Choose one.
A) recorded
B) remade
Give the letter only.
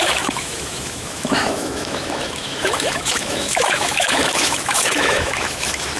B